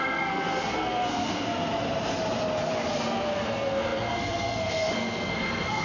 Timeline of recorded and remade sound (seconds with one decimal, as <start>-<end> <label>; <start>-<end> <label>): 0.0-1.7 remade; 1.7-2.9 recorded; 2.9-5.8 remade